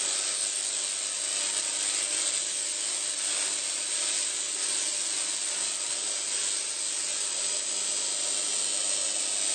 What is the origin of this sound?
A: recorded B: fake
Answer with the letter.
A